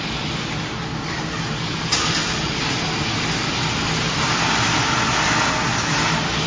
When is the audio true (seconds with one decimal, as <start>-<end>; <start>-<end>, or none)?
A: 0.0-2.2; 2.8-6.5